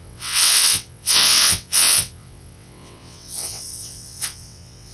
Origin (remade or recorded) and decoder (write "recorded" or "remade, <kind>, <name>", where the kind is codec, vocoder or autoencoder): remade, vocoder, WaveNeXt